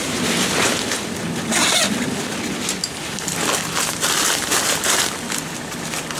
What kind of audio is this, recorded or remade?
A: recorded